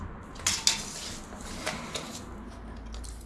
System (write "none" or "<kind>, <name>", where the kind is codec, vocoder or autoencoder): none